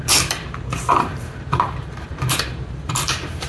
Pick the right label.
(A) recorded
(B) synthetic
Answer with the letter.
B